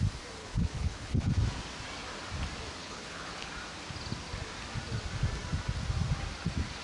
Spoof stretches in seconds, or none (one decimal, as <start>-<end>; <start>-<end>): 0.4-1.3; 2.8-3.5